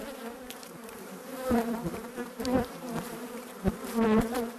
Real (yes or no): no